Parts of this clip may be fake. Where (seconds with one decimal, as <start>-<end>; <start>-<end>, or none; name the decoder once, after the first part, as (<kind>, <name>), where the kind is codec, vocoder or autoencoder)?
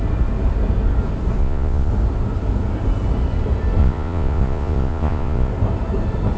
1.4-1.9 (vocoder, Vocos); 3.8-5.5